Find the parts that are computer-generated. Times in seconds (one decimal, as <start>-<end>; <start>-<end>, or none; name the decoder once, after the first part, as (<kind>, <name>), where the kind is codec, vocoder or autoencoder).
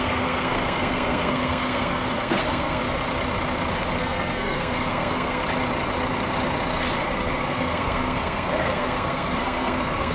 0.0-2.8 (codec, SNAC); 4.0-5.4; 7.0-10.1